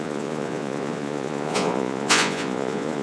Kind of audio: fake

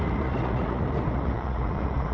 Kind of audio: fake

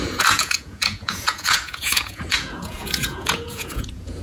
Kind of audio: fake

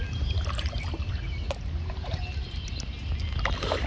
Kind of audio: real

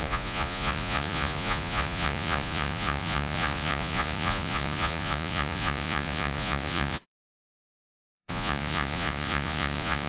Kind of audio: fake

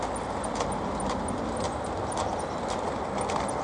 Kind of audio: real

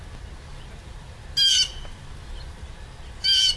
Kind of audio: real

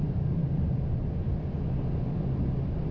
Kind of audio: real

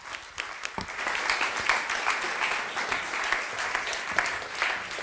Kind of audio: real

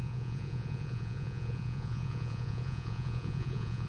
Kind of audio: fake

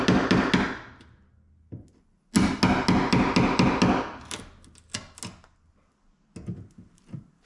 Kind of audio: real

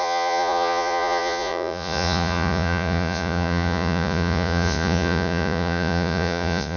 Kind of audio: fake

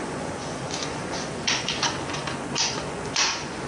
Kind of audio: fake